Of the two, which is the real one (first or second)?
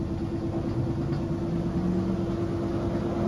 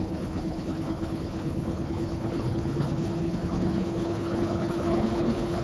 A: first